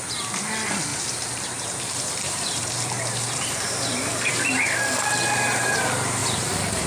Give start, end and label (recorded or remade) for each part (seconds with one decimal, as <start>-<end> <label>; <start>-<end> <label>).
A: 0.0-0.9 recorded; 0.9-4.3 remade; 4.3-6.2 recorded; 6.2-6.9 remade